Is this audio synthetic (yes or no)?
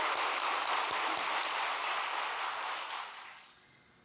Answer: no